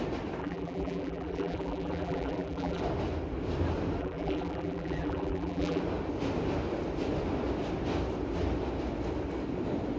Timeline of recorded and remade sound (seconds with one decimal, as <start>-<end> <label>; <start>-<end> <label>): 0.0-0.4 recorded; 0.4-2.8 remade; 2.8-4.0 recorded; 4.0-5.8 remade; 5.8-10.0 recorded